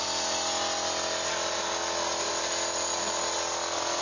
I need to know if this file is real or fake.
real